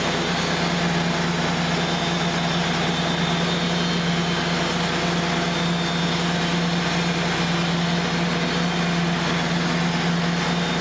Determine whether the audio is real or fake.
real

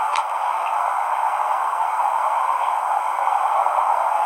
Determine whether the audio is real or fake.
fake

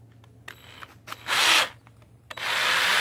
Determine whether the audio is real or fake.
real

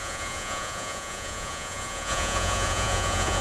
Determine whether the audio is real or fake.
fake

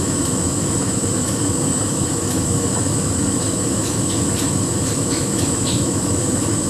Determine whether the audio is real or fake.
fake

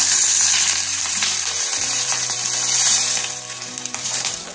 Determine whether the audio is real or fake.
fake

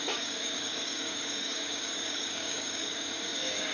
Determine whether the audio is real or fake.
fake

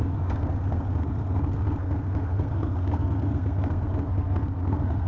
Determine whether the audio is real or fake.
fake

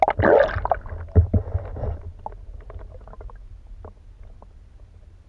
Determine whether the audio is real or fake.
real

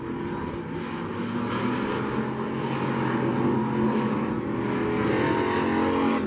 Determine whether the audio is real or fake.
real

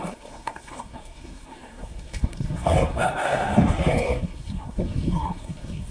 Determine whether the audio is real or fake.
fake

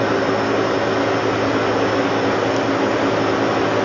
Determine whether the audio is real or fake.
real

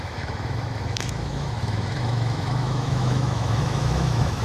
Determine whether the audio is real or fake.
fake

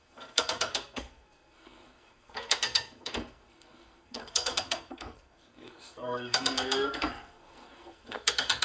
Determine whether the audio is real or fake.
fake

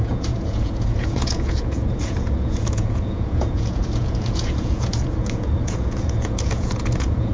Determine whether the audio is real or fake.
fake